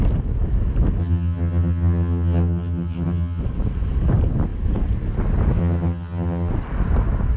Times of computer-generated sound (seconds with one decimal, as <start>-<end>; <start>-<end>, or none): 1.0-3.4; 5.6-6.5